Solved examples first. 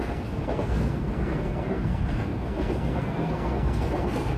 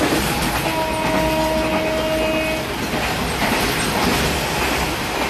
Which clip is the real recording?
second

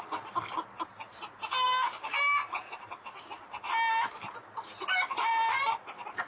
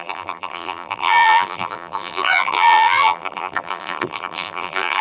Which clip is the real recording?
first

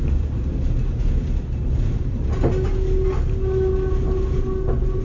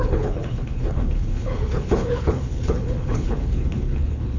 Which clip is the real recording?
first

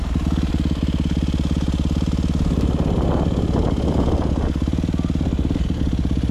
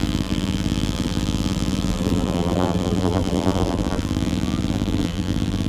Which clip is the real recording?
first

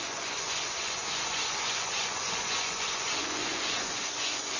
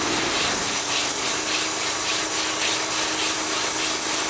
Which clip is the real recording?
second